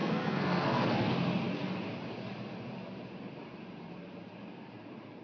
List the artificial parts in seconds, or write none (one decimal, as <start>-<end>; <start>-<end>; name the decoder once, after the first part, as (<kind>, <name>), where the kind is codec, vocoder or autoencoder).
0.0-1.1 (codec, SNAC)